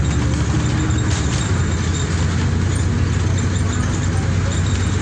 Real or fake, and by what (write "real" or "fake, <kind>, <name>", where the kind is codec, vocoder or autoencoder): real